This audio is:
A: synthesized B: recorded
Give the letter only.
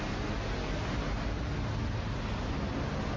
B